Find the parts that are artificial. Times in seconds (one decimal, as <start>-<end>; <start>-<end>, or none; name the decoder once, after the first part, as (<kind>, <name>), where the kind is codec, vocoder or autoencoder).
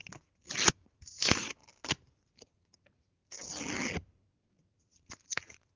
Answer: 0.7-1.6 (vocoder, Vocos); 2.4-3.2; 4.5-5.8